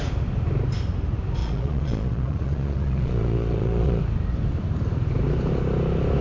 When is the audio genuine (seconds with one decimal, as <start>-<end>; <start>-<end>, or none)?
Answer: 0.0-1.4; 4.0-6.2